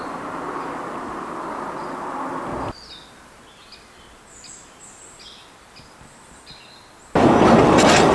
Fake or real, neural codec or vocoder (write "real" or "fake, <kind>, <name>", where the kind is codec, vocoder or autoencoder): real